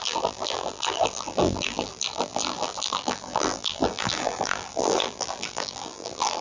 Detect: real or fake fake